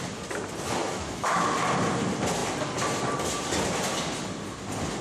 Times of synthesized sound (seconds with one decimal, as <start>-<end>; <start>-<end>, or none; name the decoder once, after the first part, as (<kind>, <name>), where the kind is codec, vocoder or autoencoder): 0.8-1.4 (autoencoder, DAC-VAE)